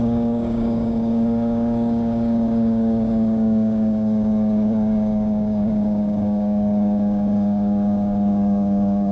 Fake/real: fake